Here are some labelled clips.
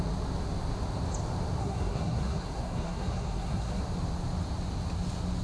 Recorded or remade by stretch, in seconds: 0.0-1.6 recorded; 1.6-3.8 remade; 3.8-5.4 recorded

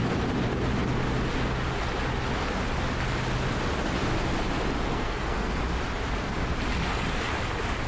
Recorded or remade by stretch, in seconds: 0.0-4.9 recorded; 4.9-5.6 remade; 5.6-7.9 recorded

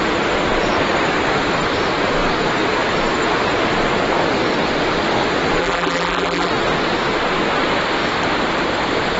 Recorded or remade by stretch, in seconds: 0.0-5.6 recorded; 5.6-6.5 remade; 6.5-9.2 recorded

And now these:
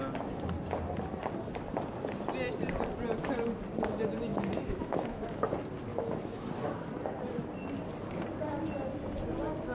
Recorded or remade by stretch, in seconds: 0.0-4.3 recorded; 4.3-5.4 remade; 5.4-5.9 recorded; 5.9-6.4 remade; 6.4-9.7 recorded